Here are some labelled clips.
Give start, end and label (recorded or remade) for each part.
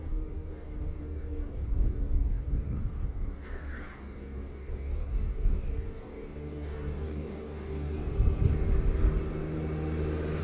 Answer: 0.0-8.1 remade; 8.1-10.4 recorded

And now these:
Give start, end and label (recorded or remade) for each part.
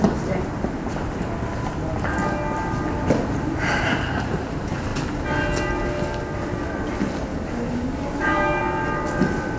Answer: 0.0-7.3 recorded; 7.3-8.6 remade; 8.6-9.6 recorded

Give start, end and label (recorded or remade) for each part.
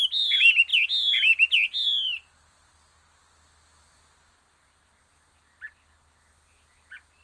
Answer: 0.0-7.2 recorded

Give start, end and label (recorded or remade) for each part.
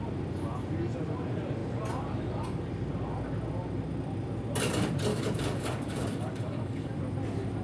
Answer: 0.0-5.1 recorded; 5.1-7.0 remade; 7.0-7.6 recorded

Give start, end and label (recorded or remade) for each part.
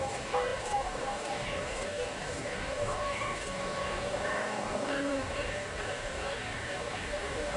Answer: 0.0-7.6 remade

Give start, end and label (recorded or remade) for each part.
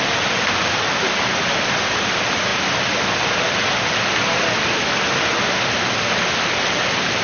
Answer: 0.0-7.2 recorded